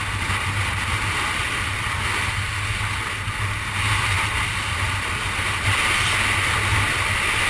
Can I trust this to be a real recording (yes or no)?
yes